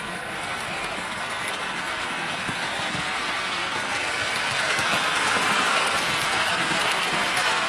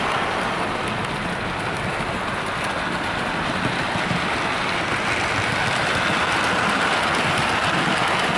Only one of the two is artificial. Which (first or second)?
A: first